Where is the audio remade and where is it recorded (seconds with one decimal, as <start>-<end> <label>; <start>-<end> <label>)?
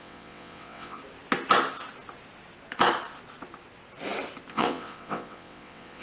0.0-1.0 remade; 1.0-4.5 recorded; 4.5-6.0 remade